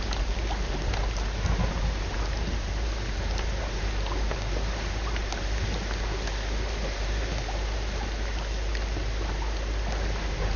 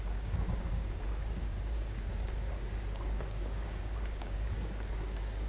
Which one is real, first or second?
first